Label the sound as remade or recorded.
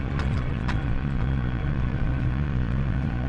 remade